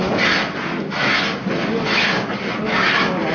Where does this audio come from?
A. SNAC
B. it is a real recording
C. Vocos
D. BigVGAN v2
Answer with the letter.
B